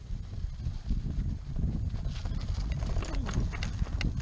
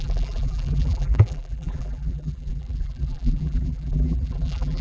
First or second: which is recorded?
first